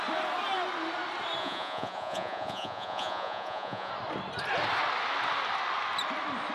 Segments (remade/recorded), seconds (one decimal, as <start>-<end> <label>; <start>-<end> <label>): 0.0-1.4 recorded; 1.4-3.9 remade; 3.9-6.5 recorded